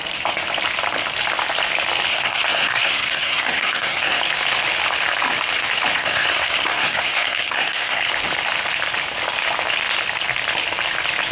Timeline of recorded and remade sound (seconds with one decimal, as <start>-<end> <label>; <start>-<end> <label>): 0.0-2.1 recorded; 2.1-4.2 remade; 4.2-5.9 recorded; 5.9-8.1 remade; 8.1-11.3 recorded